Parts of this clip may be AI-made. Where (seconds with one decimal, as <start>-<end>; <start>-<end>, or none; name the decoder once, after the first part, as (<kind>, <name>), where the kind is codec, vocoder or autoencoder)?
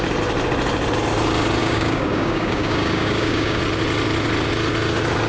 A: 1.6-3.6 (codec, DAC)